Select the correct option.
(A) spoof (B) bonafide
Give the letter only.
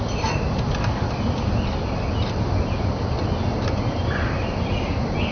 B